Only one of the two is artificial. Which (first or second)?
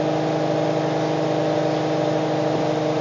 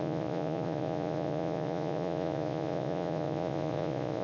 second